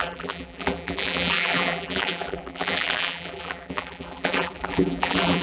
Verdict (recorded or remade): remade